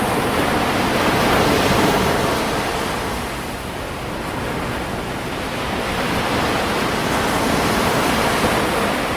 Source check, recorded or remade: recorded